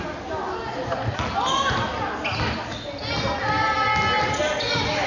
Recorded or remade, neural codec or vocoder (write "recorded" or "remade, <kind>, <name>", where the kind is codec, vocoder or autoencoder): recorded